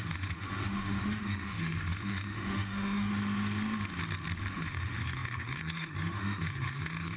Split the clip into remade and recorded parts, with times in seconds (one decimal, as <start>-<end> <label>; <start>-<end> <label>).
0.0-3.1 remade; 3.1-4.5 recorded; 4.5-7.2 remade